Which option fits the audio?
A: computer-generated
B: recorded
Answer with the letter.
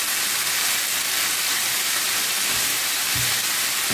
B